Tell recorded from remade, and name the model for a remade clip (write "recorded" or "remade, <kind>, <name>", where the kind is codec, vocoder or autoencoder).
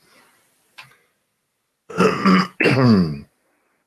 recorded